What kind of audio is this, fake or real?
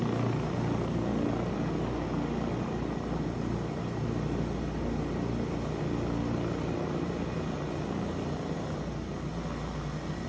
real